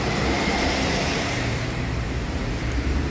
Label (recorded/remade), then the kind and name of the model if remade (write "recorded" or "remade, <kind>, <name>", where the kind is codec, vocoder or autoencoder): remade, vocoder, BigVGAN v2